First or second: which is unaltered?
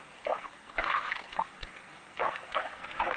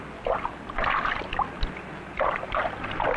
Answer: second